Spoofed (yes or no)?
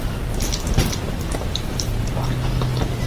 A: no